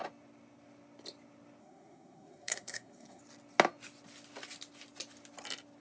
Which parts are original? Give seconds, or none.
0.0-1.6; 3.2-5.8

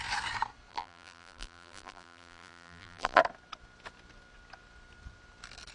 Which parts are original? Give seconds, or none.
0.0-0.7; 3.2-5.7

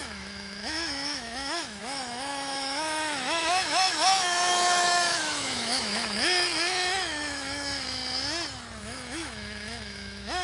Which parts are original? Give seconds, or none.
8.0-8.8

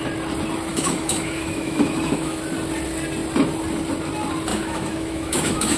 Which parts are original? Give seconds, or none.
0.0-0.7; 2.4-4.5

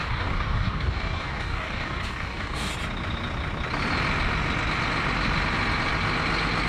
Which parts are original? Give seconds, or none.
2.7-6.7